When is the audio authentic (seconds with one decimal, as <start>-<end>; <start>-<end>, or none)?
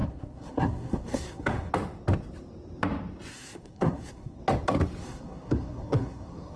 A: 1.7-3.3; 4.4-5.0